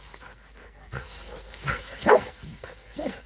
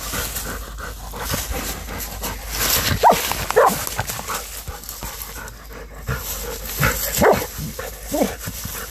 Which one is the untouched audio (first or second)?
second